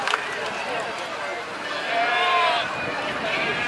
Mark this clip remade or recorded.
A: recorded